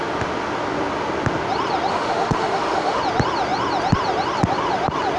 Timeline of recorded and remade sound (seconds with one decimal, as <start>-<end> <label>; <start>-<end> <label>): 0.0-1.9 recorded; 1.9-3.0 remade; 3.0-5.2 recorded